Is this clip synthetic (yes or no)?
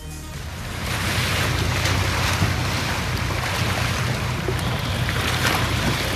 no